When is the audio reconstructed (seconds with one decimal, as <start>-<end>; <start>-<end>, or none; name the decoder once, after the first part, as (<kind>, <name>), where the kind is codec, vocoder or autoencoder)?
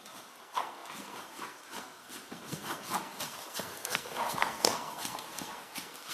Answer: 0.0-6.1 (codec, SNAC)